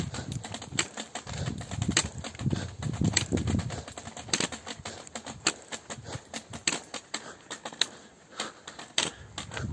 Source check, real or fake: real